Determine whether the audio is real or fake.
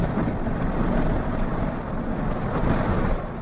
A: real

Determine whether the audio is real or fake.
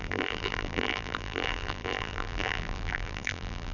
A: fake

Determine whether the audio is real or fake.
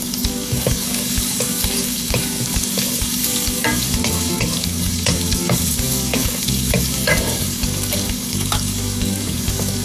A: fake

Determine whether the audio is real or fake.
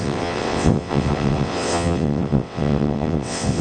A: fake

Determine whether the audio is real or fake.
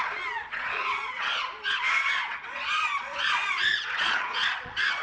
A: fake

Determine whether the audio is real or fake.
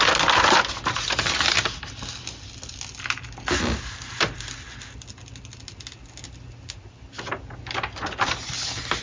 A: real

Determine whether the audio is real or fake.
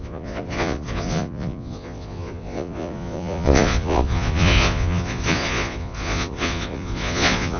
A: fake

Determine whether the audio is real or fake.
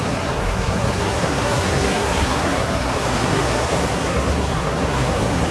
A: fake